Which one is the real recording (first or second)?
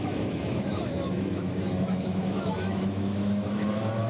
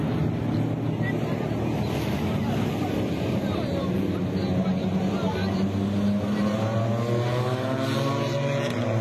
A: second